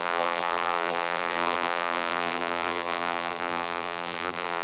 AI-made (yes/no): yes